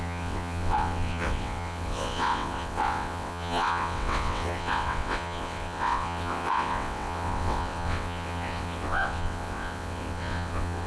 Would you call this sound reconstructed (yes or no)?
yes